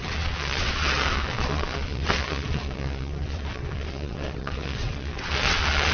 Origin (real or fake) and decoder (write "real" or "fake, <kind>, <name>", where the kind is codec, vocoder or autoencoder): fake, vocoder, WaveNeXt